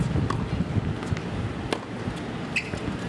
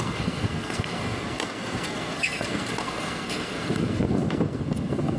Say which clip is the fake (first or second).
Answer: second